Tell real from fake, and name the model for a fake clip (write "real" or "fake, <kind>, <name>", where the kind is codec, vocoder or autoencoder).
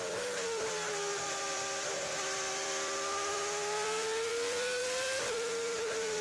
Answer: fake, vocoder, BigVGAN v2